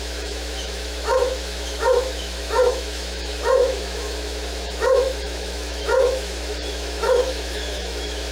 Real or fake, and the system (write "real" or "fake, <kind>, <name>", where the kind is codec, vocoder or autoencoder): fake, autoencoder, DAC-VAE